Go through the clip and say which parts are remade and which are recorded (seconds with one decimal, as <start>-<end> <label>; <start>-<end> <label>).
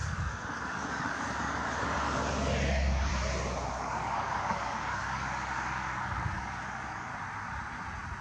0.0-3.1 remade; 3.1-3.7 recorded; 3.7-7.1 remade; 7.1-8.2 recorded